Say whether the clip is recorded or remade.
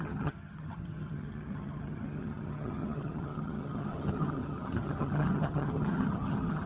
remade